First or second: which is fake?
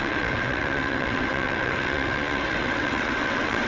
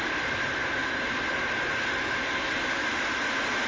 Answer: first